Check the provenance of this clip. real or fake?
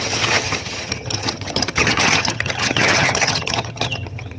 fake